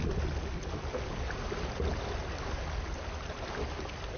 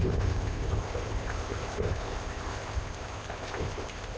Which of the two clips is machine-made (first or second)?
second